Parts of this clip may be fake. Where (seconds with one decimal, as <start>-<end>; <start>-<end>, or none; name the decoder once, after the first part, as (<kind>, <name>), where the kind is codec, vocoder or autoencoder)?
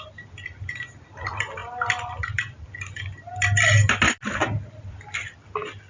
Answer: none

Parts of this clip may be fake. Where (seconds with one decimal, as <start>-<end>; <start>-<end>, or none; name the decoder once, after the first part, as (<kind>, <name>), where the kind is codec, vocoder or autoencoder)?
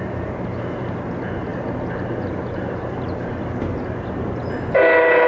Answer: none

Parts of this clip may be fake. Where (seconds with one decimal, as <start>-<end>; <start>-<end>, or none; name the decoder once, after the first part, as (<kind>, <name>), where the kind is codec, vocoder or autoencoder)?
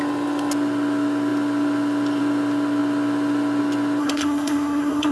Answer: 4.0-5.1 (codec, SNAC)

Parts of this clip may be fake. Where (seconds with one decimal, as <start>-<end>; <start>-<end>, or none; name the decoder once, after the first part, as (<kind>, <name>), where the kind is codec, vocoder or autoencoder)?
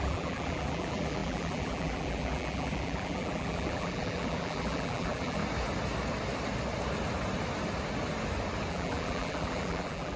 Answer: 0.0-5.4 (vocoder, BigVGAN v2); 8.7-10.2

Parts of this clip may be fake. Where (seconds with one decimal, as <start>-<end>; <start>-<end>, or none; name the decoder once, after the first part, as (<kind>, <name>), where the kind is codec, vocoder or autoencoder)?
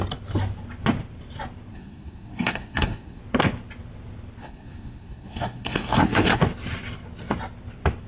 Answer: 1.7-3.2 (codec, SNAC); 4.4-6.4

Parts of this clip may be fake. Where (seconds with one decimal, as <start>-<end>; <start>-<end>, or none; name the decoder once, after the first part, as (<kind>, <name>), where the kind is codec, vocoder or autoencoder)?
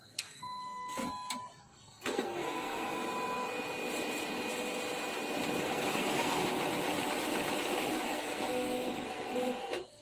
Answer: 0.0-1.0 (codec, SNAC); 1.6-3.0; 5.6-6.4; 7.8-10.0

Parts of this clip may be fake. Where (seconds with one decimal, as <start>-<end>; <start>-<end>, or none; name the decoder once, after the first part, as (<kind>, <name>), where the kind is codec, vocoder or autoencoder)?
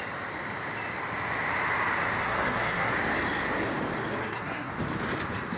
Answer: 2.2-2.9 (codec, SNAC); 4.2-4.7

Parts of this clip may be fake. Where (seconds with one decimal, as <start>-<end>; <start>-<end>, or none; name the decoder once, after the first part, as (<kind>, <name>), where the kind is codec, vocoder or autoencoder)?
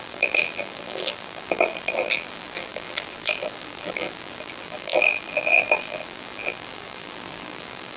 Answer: 0.0-8.0 (vocoder, BigVGAN v2)